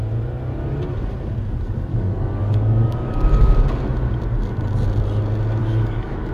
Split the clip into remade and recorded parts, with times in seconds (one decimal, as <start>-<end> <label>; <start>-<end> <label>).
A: 0.0-1.9 recorded; 1.9-3.6 remade; 3.6-5.6 recorded; 5.6-6.3 remade